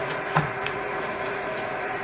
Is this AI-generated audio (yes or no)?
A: yes